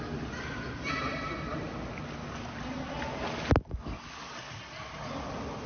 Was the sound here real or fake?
real